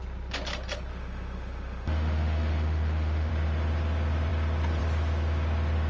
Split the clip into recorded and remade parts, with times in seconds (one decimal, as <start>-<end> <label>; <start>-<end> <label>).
0.0-0.9 recorded; 0.9-3.3 remade; 3.3-5.9 recorded